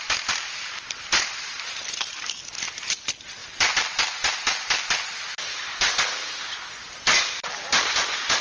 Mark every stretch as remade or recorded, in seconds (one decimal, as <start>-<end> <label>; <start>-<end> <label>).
0.0-5.3 recorded; 5.3-5.9 remade; 5.9-8.4 recorded